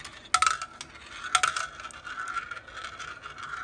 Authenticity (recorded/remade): recorded